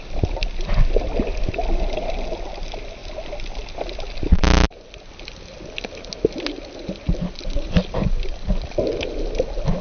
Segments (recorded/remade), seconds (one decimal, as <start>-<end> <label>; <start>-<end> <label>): 0.0-9.8 recorded